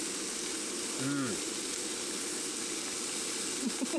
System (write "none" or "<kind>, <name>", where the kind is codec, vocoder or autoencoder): none